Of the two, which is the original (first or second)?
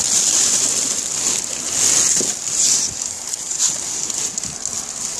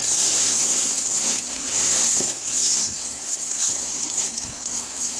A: first